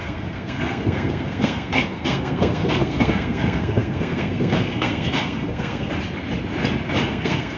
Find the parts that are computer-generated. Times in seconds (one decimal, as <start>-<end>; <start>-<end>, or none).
0.0-5.9; 7.1-7.6

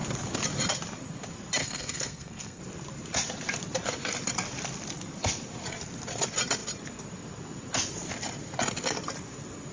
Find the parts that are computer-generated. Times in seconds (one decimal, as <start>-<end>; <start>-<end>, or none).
1.6-2.6

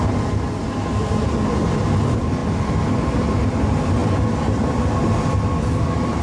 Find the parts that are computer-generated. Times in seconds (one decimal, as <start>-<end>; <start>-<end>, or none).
none

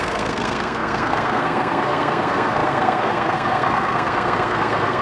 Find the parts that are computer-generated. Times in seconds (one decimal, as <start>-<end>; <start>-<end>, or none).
0.0-5.0

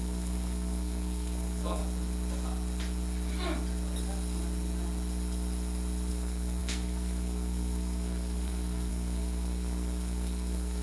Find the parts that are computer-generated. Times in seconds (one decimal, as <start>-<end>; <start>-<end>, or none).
0.0-1.8; 6.1-10.8